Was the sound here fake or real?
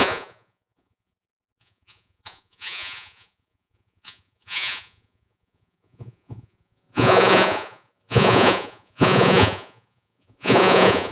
fake